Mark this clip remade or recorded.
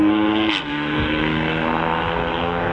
remade